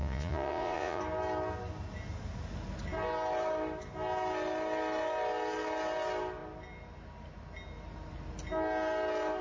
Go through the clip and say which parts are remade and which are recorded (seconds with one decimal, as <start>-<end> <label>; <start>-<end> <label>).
0.0-1.0 remade; 1.0-9.4 recorded